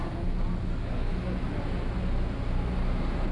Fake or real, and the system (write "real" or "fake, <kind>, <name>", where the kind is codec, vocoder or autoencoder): real